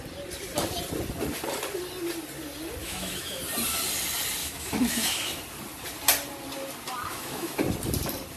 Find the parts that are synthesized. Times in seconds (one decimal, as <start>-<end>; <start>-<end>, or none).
2.8-3.4; 4.4-5.4; 7.1-7.6